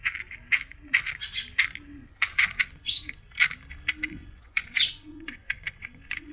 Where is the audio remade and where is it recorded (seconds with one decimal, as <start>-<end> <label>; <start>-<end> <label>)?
0.0-2.0 recorded; 2.0-3.2 remade; 3.2-4.2 recorded; 4.2-6.3 remade